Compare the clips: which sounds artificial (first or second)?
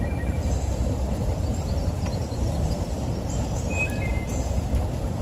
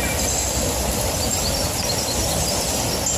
first